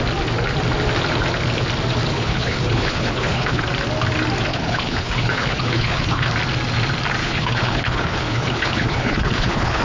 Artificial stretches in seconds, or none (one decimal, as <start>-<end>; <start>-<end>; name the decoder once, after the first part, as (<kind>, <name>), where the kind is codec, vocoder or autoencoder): 2.1-3.6 (codec, HILCodec); 4.5-6.3; 7.2-9.8